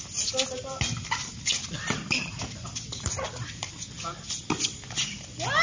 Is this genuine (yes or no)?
yes